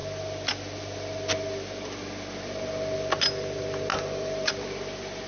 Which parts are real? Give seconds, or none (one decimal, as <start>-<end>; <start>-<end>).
0.0-3.9; 4.5-5.3